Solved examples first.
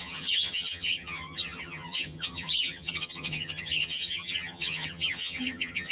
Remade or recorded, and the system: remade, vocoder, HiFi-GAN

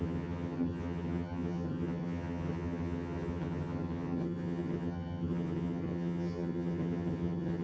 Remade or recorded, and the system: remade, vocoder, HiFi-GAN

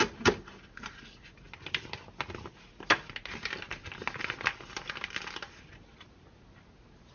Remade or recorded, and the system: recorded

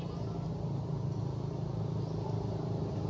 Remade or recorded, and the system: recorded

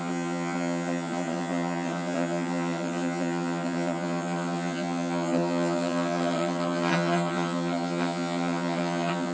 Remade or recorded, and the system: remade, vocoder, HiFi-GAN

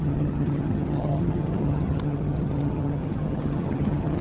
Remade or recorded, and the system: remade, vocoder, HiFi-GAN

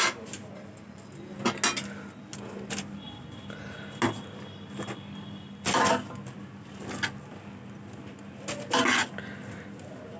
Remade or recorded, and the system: recorded